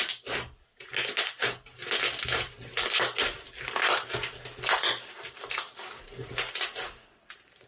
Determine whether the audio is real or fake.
real